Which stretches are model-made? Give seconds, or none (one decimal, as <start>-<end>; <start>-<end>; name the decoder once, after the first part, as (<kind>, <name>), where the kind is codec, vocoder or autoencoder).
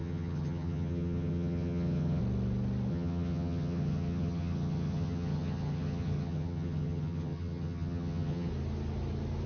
0.0-2.2 (vocoder, HiFi-GAN); 2.9-8.5